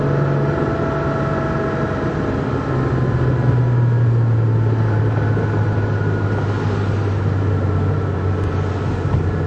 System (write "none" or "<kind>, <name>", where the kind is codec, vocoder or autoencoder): none